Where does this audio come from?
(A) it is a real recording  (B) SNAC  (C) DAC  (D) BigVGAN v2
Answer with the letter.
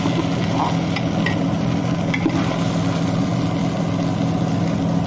A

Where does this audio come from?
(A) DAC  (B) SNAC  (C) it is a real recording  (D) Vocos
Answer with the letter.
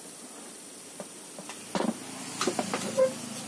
C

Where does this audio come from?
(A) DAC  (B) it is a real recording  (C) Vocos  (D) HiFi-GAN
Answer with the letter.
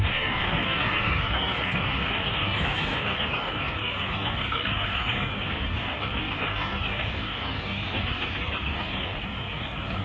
A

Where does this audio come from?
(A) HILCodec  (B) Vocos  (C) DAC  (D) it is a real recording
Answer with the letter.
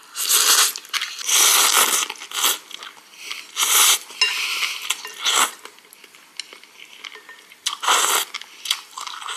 D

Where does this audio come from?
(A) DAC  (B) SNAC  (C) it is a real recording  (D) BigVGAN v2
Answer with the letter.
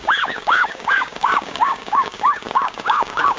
A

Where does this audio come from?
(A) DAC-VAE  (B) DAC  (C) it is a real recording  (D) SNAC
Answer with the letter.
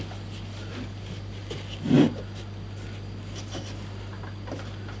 C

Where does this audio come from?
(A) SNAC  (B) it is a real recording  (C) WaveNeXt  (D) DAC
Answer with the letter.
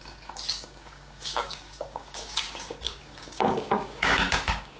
D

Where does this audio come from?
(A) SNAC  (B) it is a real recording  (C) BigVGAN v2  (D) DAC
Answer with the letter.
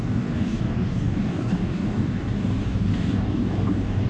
D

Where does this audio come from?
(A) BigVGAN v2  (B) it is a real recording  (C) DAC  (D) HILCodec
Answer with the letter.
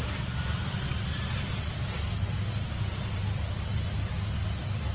B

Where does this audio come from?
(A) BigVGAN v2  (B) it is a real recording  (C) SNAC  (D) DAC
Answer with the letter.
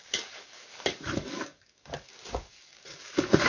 D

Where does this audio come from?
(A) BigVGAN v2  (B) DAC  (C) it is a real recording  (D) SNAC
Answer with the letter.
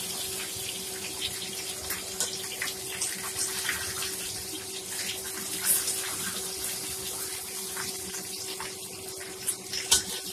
C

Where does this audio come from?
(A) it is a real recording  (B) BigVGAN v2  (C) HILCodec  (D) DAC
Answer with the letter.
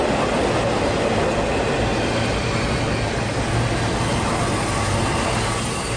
A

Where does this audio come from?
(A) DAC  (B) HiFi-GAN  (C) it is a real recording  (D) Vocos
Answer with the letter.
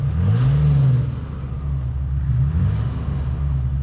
C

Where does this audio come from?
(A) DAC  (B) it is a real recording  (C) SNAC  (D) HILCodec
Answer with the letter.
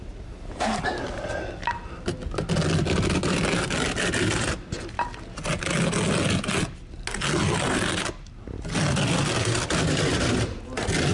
B